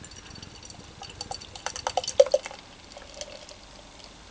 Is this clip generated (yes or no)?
no